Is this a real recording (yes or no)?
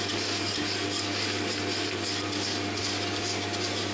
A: yes